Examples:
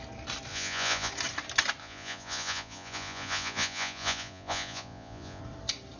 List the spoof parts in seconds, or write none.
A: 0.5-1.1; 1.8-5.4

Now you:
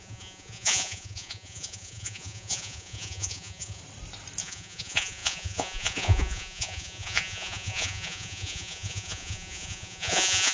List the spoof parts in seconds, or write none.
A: 0.0-3.8; 4.4-10.5

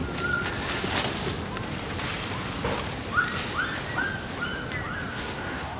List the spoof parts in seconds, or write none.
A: 5.1-5.8

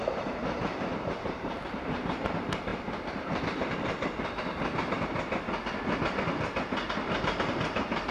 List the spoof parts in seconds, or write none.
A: 0.0-0.4; 1.1-5.1; 7.5-8.1

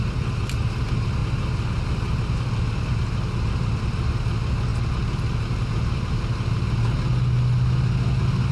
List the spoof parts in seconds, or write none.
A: none

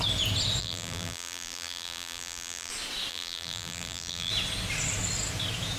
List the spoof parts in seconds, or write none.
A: 0.6-2.7; 3.1-4.3

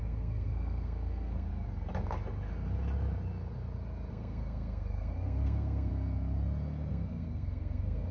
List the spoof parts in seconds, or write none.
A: 0.0-1.5; 4.1-5.9; 6.9-8.1

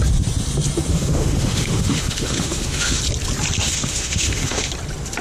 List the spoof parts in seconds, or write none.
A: 0.9-3.0; 3.6-4.7